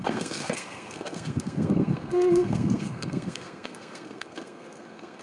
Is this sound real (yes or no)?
no